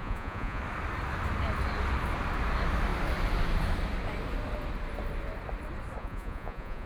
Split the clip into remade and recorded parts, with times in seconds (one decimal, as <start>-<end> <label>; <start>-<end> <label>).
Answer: 0.0-0.6 remade; 0.6-6.0 recorded; 6.0-6.9 remade